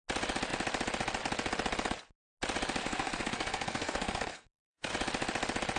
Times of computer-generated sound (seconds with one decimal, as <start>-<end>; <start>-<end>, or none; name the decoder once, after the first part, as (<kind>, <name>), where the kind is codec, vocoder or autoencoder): 2.8-4.9 (codec, SNAC)